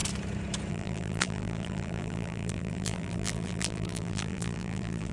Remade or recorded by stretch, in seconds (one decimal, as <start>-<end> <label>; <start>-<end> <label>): 0.0-0.7 recorded; 0.7-5.1 remade